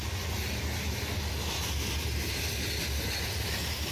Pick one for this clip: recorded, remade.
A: recorded